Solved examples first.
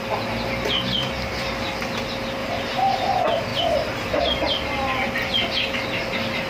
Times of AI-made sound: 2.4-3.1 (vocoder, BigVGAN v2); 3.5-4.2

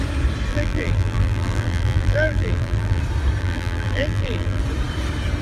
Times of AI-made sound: 0.5-3.0 (vocoder, BigVGAN v2); 3.4-4.6

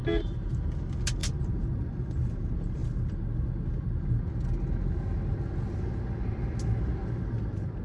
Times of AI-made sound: none

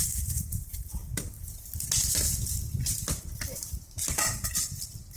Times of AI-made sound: 0.0-1.0 (vocoder, BigVGAN v2); 4.1-5.2

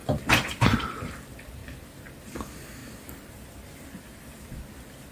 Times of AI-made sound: 2.8-3.3 (vocoder, BigVGAN v2)

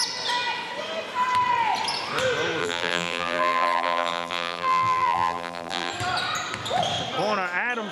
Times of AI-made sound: 2.6-5.9 (vocoder, BigVGAN v2)